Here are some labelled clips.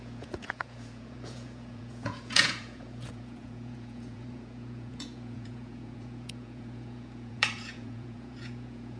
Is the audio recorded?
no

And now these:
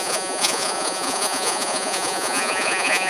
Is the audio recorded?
no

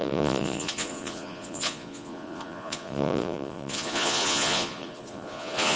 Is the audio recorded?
no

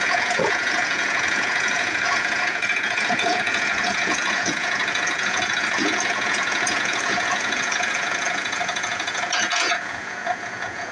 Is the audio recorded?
no